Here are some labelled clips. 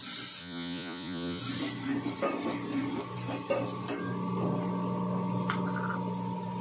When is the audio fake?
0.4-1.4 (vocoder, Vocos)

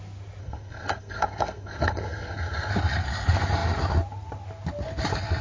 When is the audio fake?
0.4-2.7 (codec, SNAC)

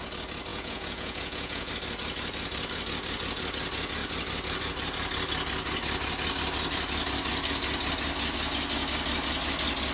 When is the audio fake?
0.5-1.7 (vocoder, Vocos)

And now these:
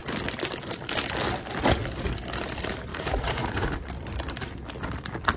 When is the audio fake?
2.9-3.7 (vocoder, Vocos)

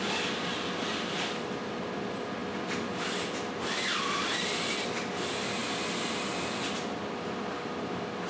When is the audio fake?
none